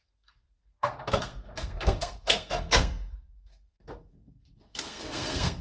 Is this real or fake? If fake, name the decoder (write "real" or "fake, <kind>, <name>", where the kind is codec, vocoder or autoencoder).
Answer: fake, codec, SNAC